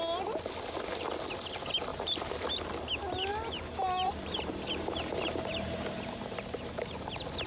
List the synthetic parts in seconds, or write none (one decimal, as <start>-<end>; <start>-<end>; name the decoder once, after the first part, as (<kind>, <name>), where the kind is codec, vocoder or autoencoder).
1.9-2.5 (vocoder, BigVGAN v2); 3.3-6.8